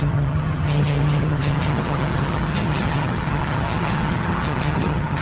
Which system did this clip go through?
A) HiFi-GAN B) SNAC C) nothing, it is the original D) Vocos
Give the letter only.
A